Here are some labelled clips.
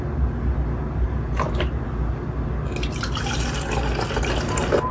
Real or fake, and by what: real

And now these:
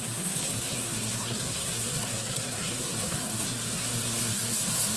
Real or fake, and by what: fake, codec, SNAC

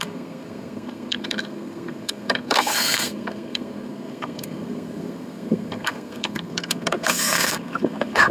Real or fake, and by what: fake, codec, SNAC